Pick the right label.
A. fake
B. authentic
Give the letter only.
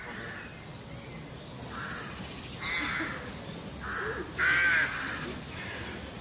B